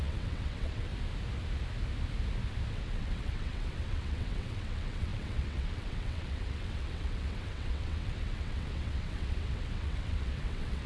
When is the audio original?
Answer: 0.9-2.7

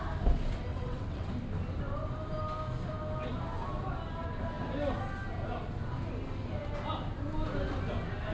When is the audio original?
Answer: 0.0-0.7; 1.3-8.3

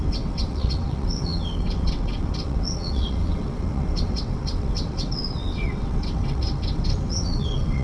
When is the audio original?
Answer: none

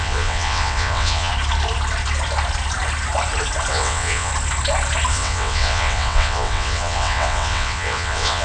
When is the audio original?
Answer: 1.3-3.7; 4.3-5.1